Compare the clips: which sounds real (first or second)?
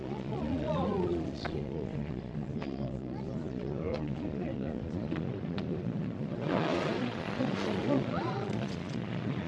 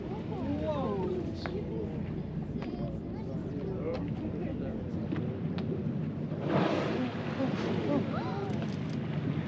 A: second